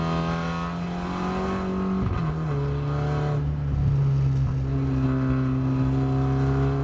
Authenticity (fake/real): real